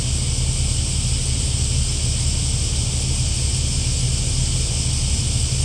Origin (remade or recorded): recorded